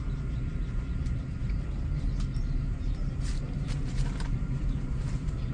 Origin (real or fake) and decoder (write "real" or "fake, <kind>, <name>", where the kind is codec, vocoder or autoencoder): fake, vocoder, BigVGAN v2